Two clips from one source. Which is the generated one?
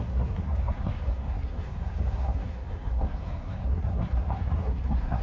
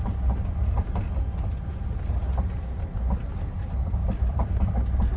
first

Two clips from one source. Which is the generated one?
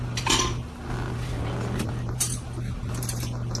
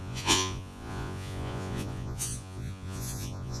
second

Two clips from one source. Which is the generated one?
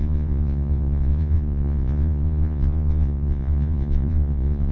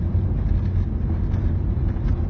first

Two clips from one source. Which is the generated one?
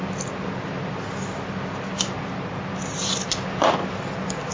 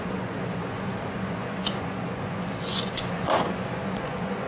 second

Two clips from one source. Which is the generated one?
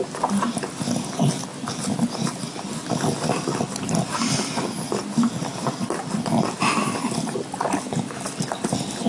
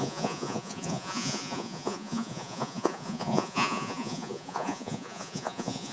second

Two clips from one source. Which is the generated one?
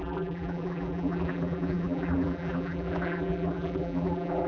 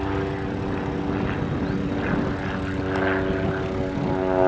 first